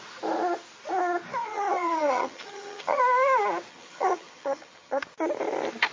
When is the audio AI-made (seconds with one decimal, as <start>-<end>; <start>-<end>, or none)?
1.4-3.0; 3.7-5.0